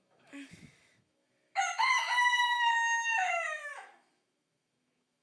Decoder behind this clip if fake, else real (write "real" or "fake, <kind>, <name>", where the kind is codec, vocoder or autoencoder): fake, autoencoder, DAC-VAE